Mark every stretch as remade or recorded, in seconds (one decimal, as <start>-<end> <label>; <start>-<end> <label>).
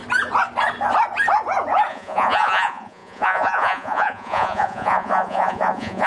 0.0-1.9 recorded; 1.9-6.1 remade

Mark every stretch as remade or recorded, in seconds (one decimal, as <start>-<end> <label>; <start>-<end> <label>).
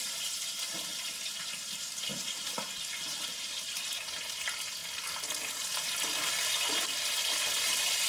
0.0-4.8 remade; 4.8-6.3 recorded; 6.3-8.1 remade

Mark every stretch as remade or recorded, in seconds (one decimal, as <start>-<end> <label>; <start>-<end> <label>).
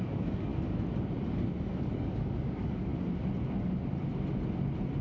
0.0-0.5 remade; 0.5-1.3 recorded; 1.3-2.9 remade; 2.9-5.0 recorded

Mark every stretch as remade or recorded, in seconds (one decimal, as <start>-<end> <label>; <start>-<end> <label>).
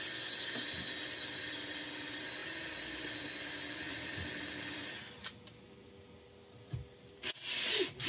0.0-8.1 recorded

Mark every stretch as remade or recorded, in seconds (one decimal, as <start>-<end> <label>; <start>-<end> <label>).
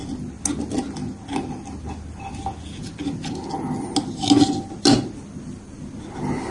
0.0-6.5 recorded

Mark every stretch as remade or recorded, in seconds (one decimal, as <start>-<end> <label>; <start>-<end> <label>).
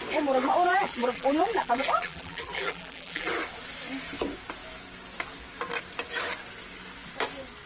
0.0-0.7 recorded; 0.7-3.3 remade; 3.3-7.7 recorded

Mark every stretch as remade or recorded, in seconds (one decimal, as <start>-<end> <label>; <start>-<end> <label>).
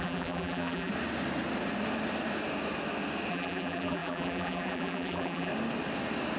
0.0-0.9 remade; 0.9-3.3 recorded; 3.3-5.5 remade; 5.5-6.4 recorded